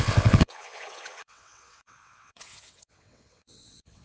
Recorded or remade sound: remade